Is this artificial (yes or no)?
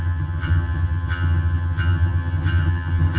yes